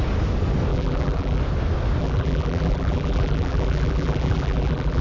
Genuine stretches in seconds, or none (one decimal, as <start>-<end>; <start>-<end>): 0.0-0.7; 1.4-2.0